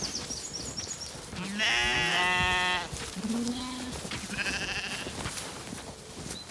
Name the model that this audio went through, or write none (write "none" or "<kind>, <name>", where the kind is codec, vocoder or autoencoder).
none